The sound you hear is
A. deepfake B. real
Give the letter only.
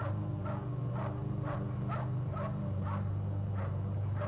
B